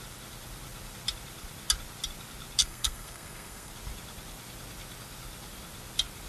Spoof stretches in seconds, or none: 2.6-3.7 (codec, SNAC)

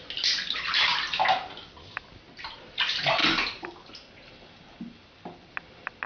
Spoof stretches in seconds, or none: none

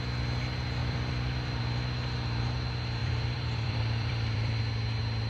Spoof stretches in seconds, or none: 0.8-1.6 (vocoder, BigVGAN v2); 3.0-4.6

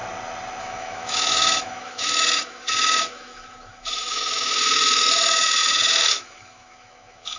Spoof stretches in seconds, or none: 0.6-7.4 (autoencoder, DAC-VAE)